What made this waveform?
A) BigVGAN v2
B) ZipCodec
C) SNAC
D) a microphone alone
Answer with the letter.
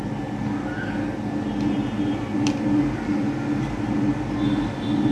D